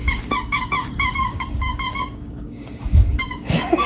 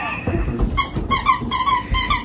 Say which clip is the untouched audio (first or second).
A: second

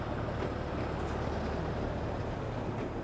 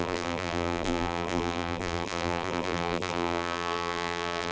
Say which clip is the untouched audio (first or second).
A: first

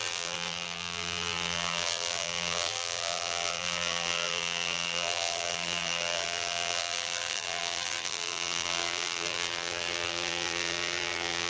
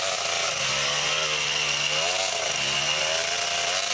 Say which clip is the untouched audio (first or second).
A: second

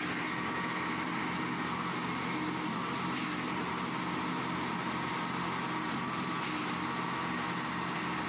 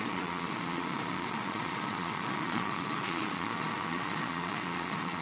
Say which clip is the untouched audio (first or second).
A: first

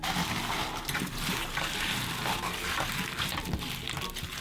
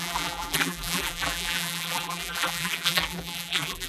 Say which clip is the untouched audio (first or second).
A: first